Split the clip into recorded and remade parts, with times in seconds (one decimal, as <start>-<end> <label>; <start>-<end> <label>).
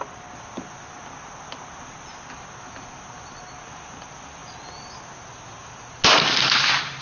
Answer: 0.0-7.0 recorded